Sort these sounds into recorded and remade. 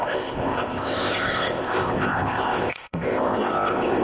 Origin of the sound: remade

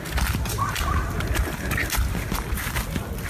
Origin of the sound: recorded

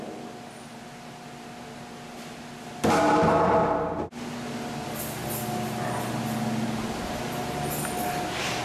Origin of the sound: recorded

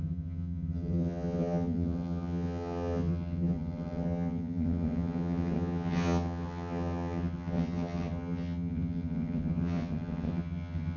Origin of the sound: remade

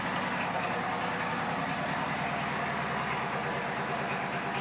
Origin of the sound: recorded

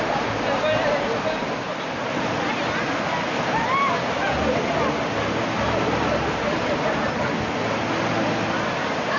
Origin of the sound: recorded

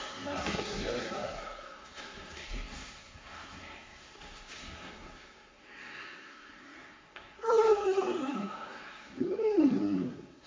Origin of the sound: remade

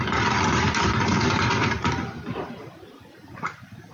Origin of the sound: remade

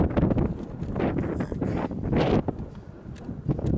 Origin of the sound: recorded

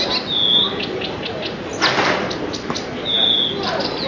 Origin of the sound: recorded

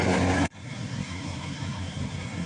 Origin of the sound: remade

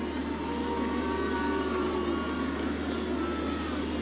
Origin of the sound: recorded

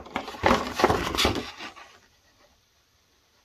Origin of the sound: recorded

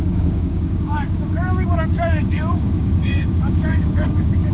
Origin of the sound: remade